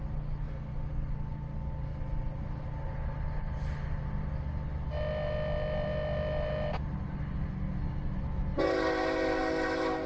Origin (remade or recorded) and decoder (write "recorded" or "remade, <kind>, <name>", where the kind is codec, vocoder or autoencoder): recorded